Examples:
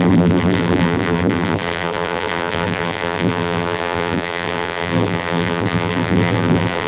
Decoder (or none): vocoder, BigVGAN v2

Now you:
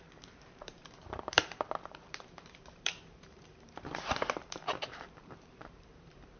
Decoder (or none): vocoder, BigVGAN v2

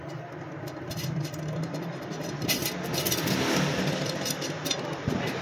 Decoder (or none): none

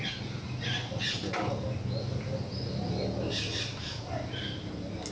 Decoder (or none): none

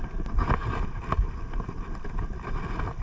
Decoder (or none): none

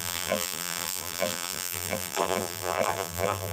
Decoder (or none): vocoder, BigVGAN v2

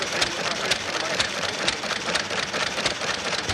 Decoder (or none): vocoder, BigVGAN v2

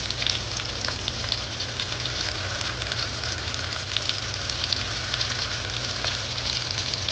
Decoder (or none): none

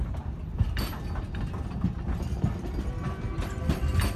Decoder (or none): none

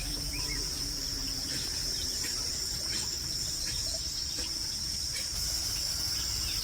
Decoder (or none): vocoder, BigVGAN v2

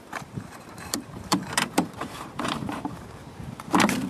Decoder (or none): vocoder, BigVGAN v2